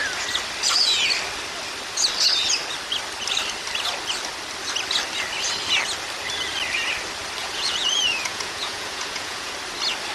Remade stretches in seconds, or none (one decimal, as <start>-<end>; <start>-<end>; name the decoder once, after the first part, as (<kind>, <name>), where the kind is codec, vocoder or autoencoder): 7.4-9.5 (vocoder, Vocos)